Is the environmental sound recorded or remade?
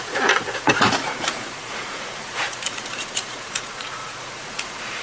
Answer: remade